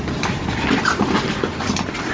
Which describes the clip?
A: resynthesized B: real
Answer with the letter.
B